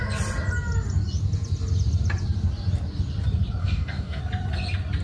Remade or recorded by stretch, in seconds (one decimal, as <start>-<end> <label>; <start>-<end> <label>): 0.0-3.6 recorded; 3.6-4.2 remade; 4.2-5.0 recorded